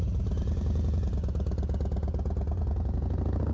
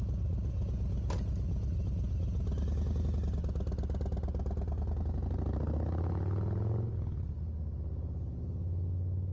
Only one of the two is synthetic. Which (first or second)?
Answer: first